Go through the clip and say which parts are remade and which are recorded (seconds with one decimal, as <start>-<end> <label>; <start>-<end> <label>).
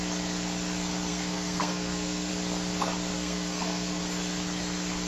0.0-1.1 recorded; 1.1-2.3 remade; 2.3-3.1 recorded; 3.1-4.0 remade; 4.0-5.1 recorded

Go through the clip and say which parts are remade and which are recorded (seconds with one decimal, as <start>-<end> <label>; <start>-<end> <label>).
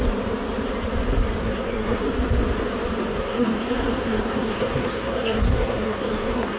0.0-1.4 recorded; 1.4-2.0 remade; 2.0-3.1 recorded; 3.1-6.6 remade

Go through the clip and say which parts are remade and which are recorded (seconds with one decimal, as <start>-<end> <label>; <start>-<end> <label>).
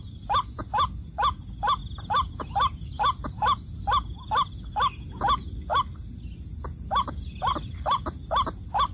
0.0-8.9 recorded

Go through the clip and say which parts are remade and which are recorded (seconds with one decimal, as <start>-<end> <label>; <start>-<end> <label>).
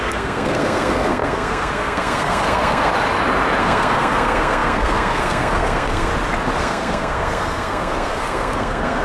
0.0-2.9 remade; 2.9-3.6 recorded; 3.6-6.1 remade; 6.1-6.6 recorded; 6.6-9.0 remade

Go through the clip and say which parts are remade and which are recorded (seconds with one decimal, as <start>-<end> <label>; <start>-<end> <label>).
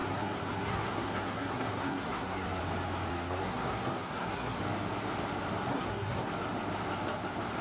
0.0-2.6 remade; 2.6-3.1 recorded; 3.1-4.6 remade; 4.6-5.7 recorded; 5.7-6.3 remade; 6.3-7.6 recorded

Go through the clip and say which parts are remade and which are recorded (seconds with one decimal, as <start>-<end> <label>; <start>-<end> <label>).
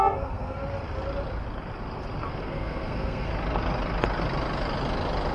0.0-0.6 remade; 0.6-2.4 recorded; 2.4-3.3 remade; 3.3-5.3 recorded